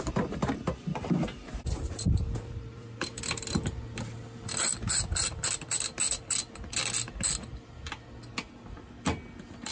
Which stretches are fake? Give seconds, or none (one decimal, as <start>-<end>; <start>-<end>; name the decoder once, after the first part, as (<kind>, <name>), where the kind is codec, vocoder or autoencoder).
0.4-3.2 (vocoder, BigVGAN v2)